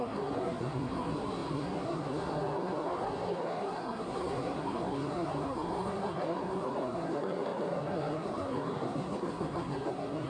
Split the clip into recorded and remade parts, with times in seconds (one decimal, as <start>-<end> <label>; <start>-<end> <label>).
0.0-10.3 remade